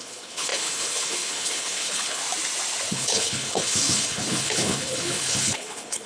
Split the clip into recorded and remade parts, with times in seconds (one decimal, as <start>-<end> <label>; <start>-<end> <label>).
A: 0.0-2.2 remade; 2.2-2.9 recorded; 2.9-6.1 remade